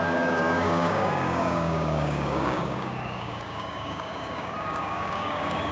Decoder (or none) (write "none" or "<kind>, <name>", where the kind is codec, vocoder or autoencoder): codec, DAC